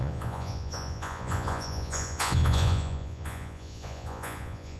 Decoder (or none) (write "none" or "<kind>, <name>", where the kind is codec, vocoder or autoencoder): vocoder, Vocos